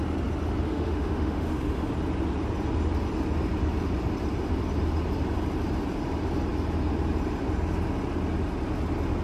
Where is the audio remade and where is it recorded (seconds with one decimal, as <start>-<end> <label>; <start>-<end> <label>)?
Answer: 0.0-0.7 recorded; 0.7-1.9 remade; 1.9-9.2 recorded